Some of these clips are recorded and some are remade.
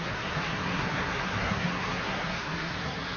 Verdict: remade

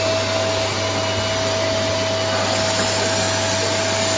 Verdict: recorded